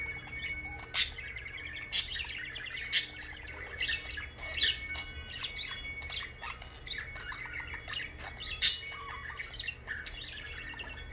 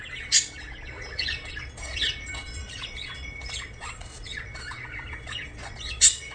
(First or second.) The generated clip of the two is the second